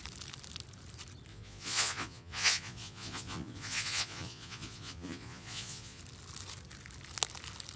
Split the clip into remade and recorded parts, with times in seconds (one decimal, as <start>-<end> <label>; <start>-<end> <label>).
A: 0.0-1.3 recorded; 1.3-6.0 remade; 6.0-7.8 recorded